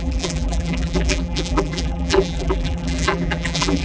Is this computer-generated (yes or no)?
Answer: yes